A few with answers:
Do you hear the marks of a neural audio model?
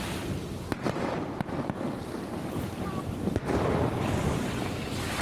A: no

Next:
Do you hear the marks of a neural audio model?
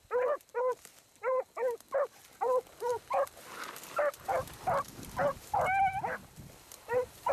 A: no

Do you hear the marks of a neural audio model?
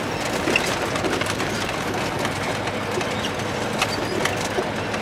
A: no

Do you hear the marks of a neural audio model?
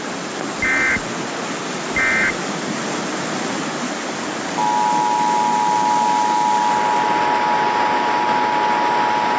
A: no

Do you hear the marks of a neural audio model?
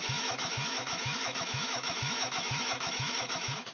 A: yes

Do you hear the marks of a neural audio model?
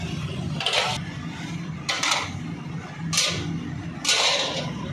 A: no